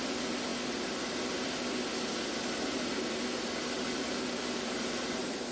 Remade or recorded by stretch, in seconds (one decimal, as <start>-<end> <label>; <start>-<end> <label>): 0.0-5.5 recorded